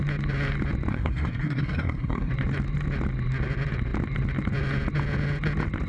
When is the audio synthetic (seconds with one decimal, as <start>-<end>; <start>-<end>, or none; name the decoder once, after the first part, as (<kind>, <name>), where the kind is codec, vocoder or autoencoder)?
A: 0.9-2.3 (codec, SNAC)